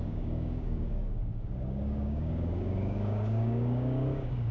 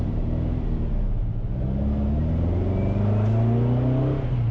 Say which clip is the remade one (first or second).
first